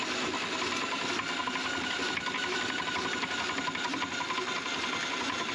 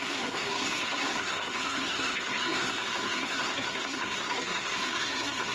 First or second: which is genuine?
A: first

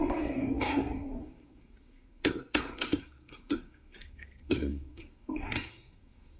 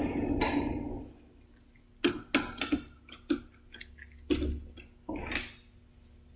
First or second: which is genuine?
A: second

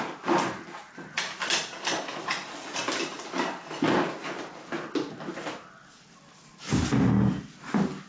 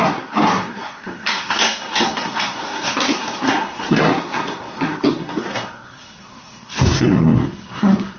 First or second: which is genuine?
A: first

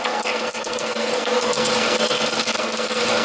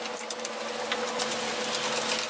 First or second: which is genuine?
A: second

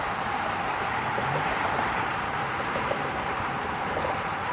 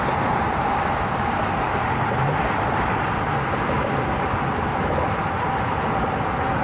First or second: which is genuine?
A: second